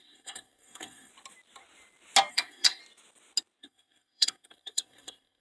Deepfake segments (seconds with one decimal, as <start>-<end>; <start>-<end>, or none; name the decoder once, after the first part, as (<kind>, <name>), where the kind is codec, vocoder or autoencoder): 0.0-1.1 (codec, SNAC); 2.3-2.8; 3.6-5.4